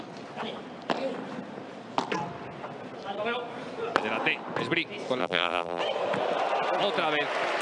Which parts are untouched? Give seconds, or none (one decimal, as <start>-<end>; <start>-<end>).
0.0-5.2; 5.8-7.6